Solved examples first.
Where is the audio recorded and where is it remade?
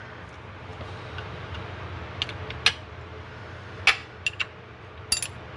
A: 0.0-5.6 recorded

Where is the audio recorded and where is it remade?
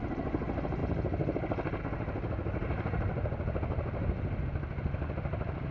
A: 0.0-5.7 recorded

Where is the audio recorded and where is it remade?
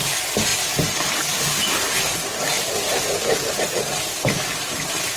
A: 0.0-5.2 recorded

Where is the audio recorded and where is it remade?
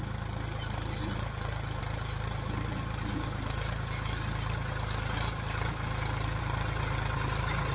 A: 0.0-7.7 recorded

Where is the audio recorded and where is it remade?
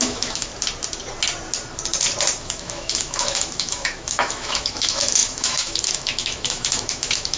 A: 0.0-0.5 remade; 0.5-2.4 recorded; 2.4-7.4 remade